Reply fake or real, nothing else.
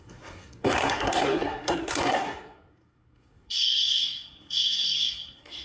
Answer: fake